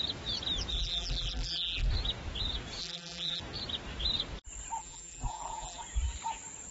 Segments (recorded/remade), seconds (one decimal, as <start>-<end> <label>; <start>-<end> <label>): 0.0-0.7 recorded; 0.7-1.9 remade; 1.9-2.8 recorded; 2.8-3.4 remade; 3.4-4.8 recorded; 4.8-5.8 remade; 5.8-6.7 recorded